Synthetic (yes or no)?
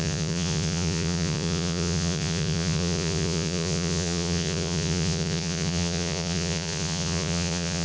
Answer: yes